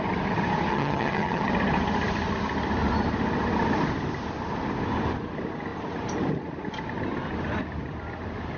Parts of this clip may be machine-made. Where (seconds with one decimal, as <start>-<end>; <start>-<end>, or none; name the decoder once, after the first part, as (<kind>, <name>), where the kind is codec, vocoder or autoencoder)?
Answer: 0.7-1.5 (vocoder, HiFi-GAN)